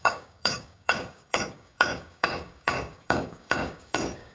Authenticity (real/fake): fake